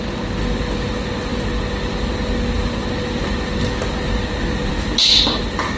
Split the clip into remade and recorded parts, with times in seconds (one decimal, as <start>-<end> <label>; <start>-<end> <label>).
0.0-5.8 recorded